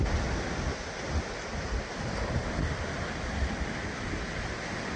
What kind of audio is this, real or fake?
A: real